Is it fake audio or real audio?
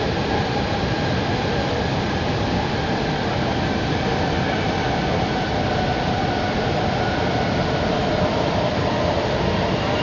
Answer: real